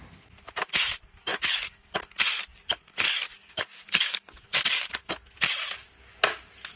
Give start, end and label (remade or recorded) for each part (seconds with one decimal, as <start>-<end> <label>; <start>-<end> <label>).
0.0-1.3 recorded; 1.3-2.0 remade; 2.0-2.5 recorded; 2.5-5.1 remade; 5.1-6.8 recorded